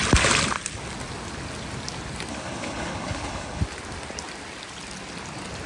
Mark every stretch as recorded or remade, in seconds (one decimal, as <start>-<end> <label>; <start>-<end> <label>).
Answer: 0.0-2.3 recorded; 2.3-3.6 remade; 3.6-5.7 recorded